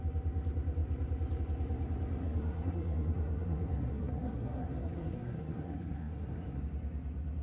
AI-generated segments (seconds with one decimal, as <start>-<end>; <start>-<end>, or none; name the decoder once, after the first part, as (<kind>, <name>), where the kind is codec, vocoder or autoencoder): 2.2-6.6 (codec, SNAC)